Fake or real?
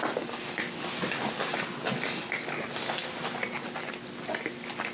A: real